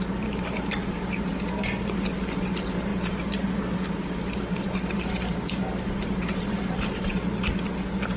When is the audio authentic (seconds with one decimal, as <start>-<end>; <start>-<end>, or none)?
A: 1.3-2.2; 7.2-8.2